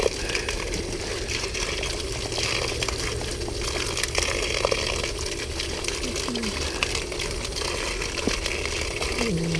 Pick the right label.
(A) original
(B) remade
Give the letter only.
A